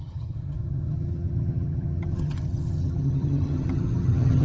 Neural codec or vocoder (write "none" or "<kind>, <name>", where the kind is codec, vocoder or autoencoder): vocoder, HiFi-GAN